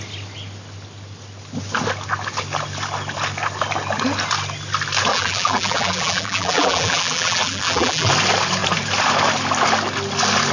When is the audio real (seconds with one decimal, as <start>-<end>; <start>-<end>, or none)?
0.0-5.1; 8.1-10.5